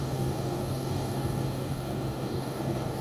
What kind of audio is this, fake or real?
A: fake